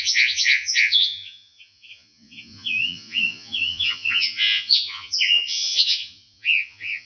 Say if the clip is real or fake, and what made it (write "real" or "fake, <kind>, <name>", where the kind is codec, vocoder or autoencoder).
fake, vocoder, Vocos